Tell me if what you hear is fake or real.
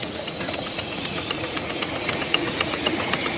fake